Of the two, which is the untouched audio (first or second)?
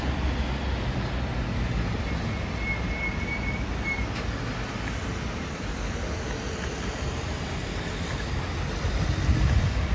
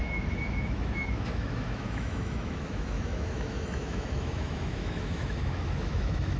first